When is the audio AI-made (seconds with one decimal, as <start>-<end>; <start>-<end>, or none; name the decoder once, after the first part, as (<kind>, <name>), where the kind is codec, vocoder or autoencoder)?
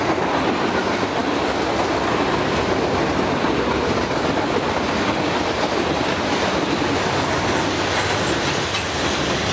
none